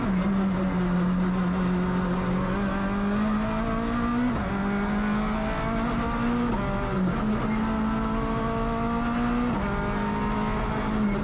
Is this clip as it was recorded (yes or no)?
yes